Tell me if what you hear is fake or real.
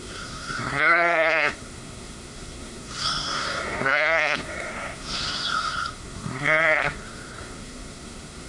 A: fake